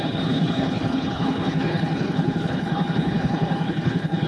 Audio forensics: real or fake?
fake